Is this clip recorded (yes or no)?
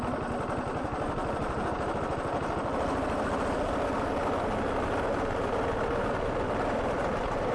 yes